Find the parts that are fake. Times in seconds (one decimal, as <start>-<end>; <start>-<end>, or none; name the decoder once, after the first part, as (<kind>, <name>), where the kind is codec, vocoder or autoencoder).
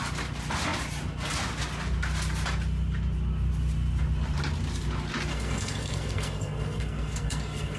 5.3-7.8 (codec, SNAC)